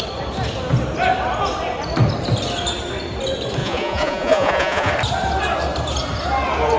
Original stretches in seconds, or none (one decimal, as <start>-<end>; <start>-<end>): 0.0-3.6; 4.9-6.8